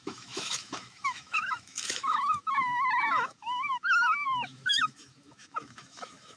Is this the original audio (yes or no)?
no